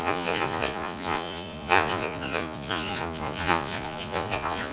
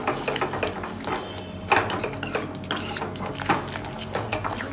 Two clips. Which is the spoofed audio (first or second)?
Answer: first